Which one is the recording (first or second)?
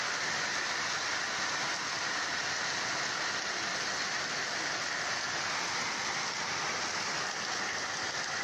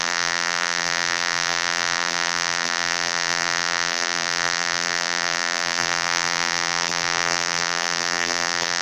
first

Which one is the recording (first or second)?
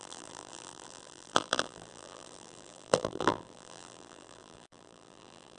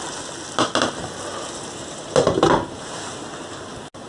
second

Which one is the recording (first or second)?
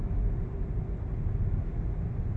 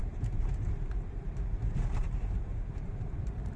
first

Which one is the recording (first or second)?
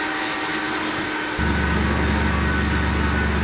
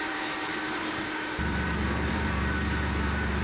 first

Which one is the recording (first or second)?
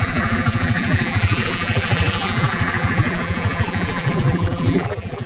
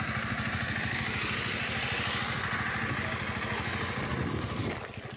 second